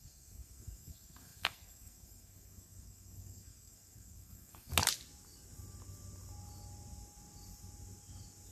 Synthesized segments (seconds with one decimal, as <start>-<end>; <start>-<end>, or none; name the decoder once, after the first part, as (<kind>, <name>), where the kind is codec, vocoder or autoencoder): 0.0-4.7 (codec, SNAC)